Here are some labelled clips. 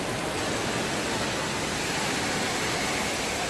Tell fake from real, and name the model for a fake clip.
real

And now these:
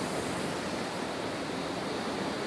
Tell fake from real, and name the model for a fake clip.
real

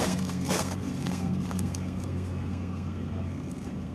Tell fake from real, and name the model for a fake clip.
fake, codec, SNAC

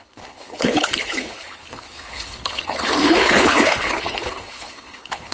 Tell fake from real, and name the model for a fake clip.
fake, codec, HILCodec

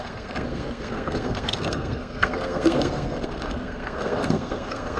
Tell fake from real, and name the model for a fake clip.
fake, codec, SNAC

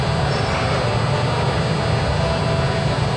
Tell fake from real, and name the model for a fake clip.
real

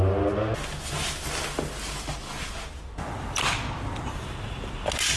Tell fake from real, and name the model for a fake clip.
real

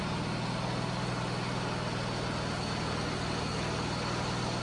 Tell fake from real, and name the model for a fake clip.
real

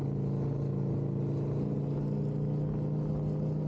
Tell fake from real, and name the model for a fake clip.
real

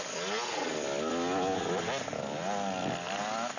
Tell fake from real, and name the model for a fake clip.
real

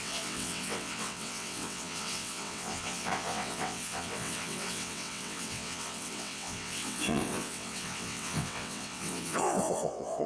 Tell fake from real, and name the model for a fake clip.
fake, vocoder, WaveNeXt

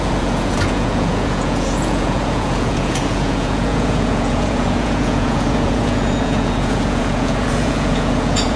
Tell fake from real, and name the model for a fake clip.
fake, vocoder, Vocos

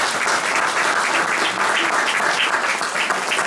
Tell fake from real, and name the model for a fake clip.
real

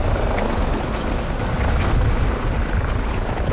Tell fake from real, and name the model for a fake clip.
real